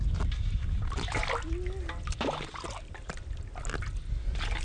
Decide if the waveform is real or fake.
real